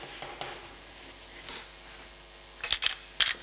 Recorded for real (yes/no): yes